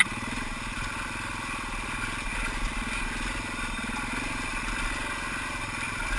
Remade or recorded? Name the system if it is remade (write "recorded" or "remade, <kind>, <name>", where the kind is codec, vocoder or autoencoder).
recorded